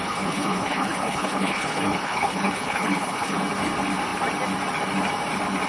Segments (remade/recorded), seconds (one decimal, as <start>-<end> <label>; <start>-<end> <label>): 0.0-3.4 remade; 3.4-5.7 recorded